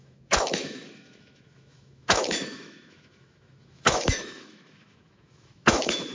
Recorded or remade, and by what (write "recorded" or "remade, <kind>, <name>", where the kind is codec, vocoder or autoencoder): remade, autoencoder, DAC-VAE